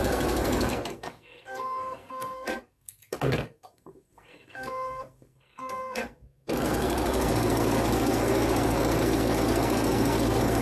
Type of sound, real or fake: fake